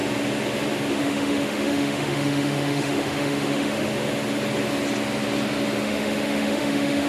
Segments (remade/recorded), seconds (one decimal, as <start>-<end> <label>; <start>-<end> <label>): 0.0-0.9 recorded; 0.9-3.9 remade; 3.9-5.8 recorded; 5.8-7.1 remade